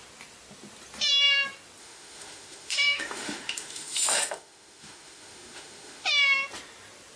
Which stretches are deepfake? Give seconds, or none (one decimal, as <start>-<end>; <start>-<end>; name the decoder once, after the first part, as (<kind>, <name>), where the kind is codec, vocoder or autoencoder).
1.8-6.1 (autoencoder, DAC-VAE)